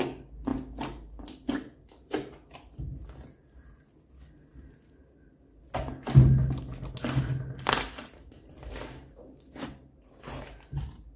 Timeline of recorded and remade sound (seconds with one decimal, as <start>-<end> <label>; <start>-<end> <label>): 0.0-11.2 recorded